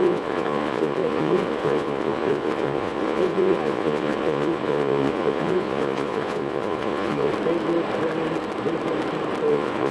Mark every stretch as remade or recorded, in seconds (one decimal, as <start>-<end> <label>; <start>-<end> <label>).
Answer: 0.0-7.3 remade; 7.3-9.5 recorded; 9.5-9.9 remade